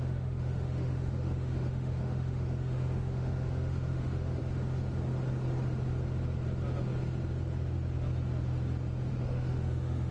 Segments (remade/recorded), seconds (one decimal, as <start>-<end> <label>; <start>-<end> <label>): 0.0-4.4 remade; 4.4-9.1 recorded; 9.1-10.1 remade